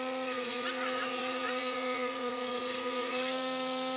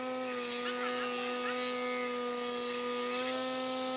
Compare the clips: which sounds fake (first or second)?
first